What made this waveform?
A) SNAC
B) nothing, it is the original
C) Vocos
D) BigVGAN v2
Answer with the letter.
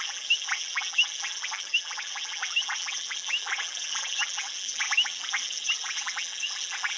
D